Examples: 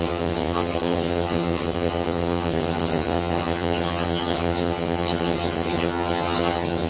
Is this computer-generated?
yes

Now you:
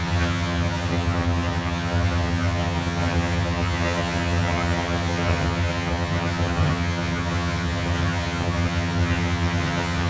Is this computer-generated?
yes